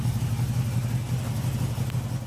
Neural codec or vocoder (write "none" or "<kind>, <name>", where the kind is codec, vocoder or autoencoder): none